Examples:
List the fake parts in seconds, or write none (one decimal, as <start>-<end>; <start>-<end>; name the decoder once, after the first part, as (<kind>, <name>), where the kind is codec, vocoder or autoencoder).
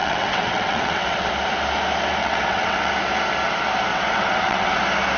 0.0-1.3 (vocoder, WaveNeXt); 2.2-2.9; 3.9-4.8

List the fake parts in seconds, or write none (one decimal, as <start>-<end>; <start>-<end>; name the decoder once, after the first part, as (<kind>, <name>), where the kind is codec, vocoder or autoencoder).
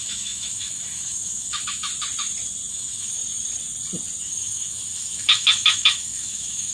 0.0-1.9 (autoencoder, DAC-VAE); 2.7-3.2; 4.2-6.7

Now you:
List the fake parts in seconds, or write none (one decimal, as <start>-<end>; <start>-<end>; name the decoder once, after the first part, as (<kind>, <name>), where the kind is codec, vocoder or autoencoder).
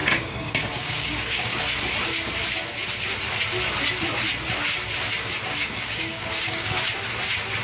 0.0-1.6 (codec, DAC); 5.6-6.8